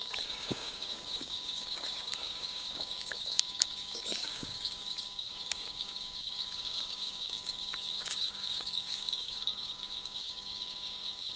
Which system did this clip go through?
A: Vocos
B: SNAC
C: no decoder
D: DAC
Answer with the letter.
D